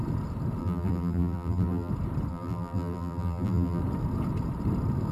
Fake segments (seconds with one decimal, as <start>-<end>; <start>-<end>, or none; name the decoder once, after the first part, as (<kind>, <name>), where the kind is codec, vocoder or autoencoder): 0.6-1.9 (vocoder, BigVGAN v2); 2.3-3.8